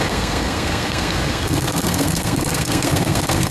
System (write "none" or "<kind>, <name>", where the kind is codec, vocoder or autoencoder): codec, SNAC